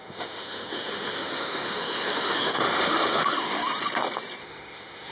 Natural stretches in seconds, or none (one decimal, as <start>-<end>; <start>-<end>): 3.6-4.4